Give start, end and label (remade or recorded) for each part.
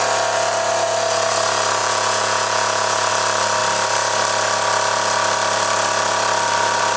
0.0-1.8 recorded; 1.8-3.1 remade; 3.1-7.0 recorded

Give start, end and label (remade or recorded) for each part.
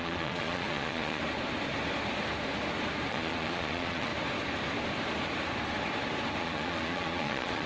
0.0-1.2 remade; 1.2-3.1 recorded; 3.1-4.1 remade; 4.1-6.4 recorded; 6.4-7.7 remade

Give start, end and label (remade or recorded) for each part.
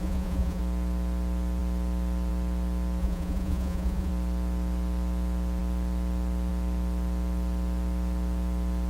0.0-0.6 remade; 0.6-3.0 recorded; 3.0-4.1 remade; 4.1-8.9 recorded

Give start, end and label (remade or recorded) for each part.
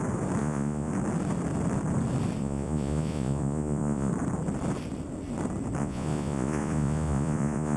0.0-0.4 recorded; 0.4-0.9 remade; 0.9-2.4 recorded; 2.4-4.1 remade; 4.1-5.8 recorded; 5.8-7.8 remade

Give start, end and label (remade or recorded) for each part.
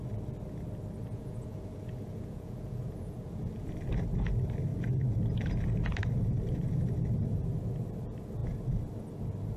0.0-1.0 recorded; 1.0-3.7 remade; 3.7-9.6 recorded